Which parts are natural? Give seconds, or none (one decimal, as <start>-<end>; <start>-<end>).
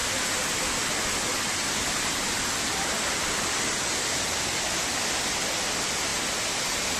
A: 0.0-7.0